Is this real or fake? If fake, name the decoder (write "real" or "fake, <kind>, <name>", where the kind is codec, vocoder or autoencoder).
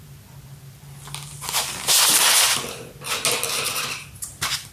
real